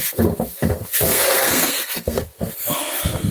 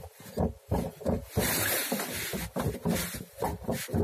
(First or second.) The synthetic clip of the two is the first